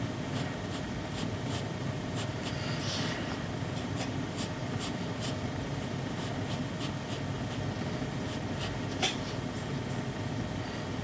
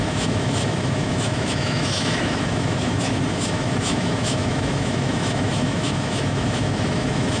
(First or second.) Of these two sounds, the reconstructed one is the second